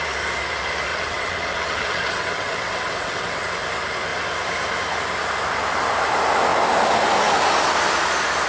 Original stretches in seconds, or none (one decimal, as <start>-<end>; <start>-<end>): 0.0-0.9; 3.5-8.5